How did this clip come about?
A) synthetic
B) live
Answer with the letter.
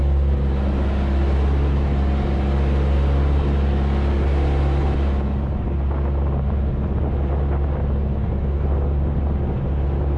B